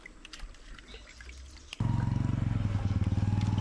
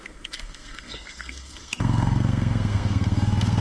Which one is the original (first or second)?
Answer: first